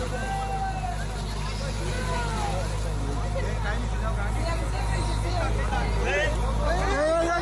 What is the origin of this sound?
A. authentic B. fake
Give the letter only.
A